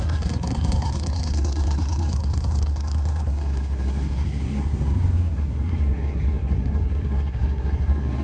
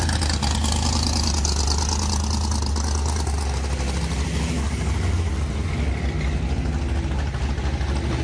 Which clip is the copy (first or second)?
first